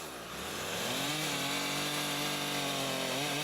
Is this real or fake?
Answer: real